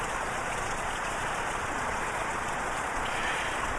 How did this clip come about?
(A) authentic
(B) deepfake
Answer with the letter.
B